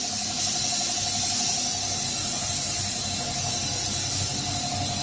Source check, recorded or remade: recorded